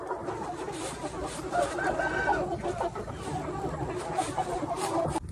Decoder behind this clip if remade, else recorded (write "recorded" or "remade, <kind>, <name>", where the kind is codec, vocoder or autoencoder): recorded